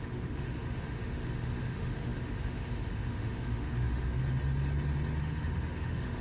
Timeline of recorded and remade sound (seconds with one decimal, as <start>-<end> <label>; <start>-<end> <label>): 0.0-4.2 remade; 4.2-5.2 recorded; 5.2-6.2 remade